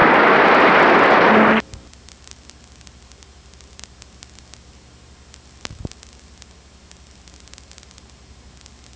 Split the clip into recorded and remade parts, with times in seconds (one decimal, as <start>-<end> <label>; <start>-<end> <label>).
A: 0.0-9.0 recorded